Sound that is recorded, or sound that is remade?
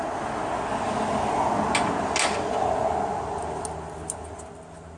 recorded